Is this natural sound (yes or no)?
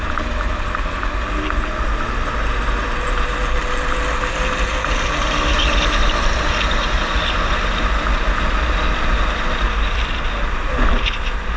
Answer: yes